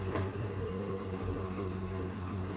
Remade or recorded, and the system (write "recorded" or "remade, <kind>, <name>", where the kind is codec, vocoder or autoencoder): remade, codec, SNAC